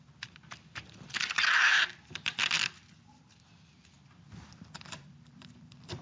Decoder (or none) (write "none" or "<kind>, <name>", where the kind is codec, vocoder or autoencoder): vocoder, BigVGAN v2